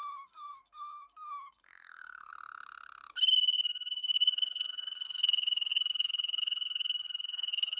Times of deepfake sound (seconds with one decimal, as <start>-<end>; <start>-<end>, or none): 0.0-2.3; 3.3-7.8